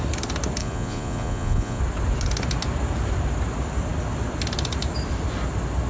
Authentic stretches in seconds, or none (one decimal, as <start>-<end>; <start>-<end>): 0.0-0.6; 1.8-5.9